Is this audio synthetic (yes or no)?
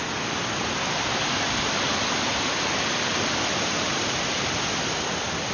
no